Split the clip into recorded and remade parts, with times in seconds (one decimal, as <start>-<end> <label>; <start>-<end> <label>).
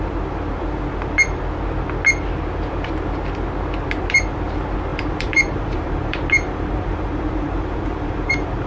0.0-4.9 recorded; 4.9-8.7 remade